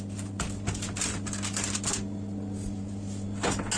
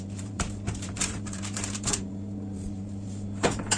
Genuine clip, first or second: first